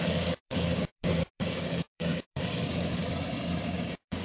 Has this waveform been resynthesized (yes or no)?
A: yes